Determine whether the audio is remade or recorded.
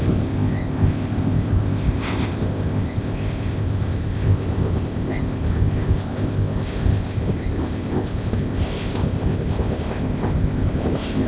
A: remade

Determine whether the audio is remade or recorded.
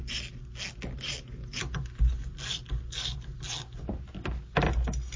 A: recorded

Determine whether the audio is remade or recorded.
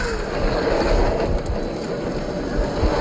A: recorded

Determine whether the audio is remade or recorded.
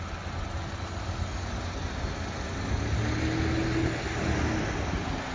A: recorded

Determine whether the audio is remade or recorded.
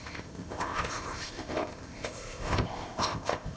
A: remade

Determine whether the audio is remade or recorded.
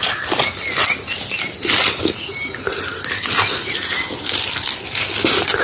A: recorded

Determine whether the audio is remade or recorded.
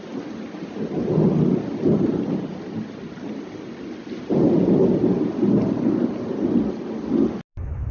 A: recorded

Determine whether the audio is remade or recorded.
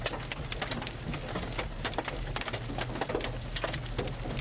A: recorded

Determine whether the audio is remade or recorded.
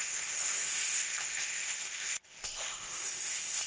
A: remade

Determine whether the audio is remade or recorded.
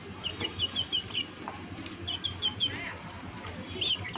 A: recorded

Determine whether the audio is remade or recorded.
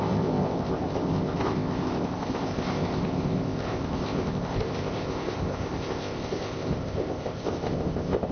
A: remade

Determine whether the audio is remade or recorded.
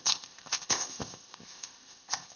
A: remade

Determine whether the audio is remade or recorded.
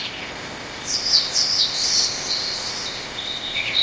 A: remade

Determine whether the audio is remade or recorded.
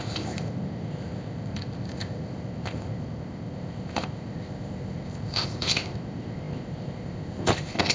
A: remade